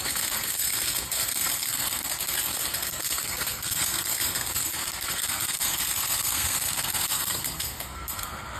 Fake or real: fake